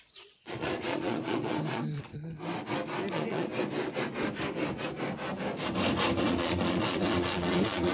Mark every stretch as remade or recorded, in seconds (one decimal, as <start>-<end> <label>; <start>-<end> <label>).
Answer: 0.0-2.1 remade; 2.1-3.1 recorded; 3.1-3.5 remade; 3.5-6.2 recorded; 6.2-7.9 remade